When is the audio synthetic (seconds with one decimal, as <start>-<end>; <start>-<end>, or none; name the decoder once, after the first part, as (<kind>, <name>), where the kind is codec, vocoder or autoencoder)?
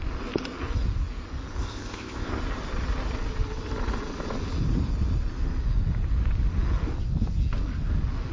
1.6-2.4 (codec, ZipCodec)